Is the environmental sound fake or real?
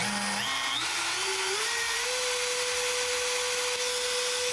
real